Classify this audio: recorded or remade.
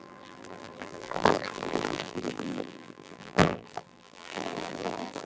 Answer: remade